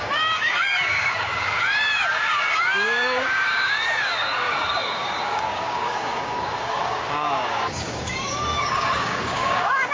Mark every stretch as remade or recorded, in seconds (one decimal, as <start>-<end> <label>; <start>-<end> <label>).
0.0-9.9 remade